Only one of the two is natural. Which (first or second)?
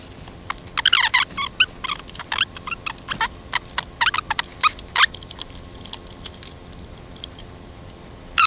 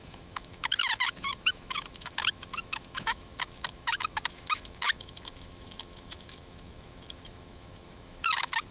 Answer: first